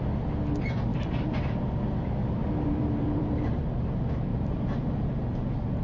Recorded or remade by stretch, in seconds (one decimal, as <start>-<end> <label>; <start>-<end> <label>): 0.0-0.9 recorded; 0.9-1.8 remade; 1.8-2.4 recorded; 2.4-3.6 remade; 3.6-4.3 recorded; 4.3-5.8 remade